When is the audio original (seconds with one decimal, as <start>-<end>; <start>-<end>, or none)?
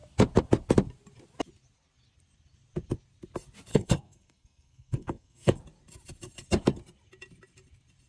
0.0-3.7; 5.6-8.1